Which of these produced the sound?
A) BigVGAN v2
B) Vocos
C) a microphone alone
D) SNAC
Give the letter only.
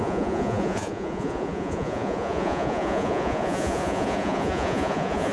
B